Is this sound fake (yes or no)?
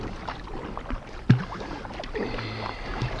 no